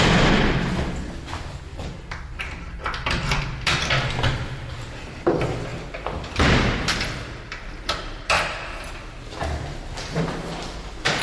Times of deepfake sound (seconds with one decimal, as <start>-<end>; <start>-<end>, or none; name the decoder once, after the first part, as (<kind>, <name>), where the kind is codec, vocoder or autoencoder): 1.7-2.7 (vocoder, BigVGAN v2)